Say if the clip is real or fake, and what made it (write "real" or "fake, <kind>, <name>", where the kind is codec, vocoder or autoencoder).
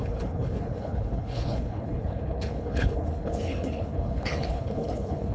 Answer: fake, codec, HILCodec